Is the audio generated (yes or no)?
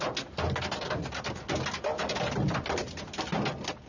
no